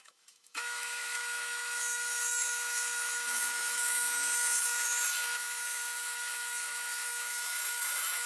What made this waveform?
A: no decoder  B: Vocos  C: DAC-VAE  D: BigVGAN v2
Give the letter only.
C